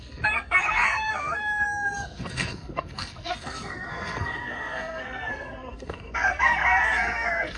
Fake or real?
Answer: fake